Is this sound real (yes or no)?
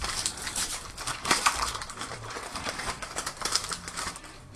no